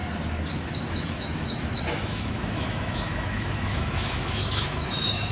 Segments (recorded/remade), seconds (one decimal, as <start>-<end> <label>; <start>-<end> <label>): 0.0-0.9 recorded; 0.9-5.3 remade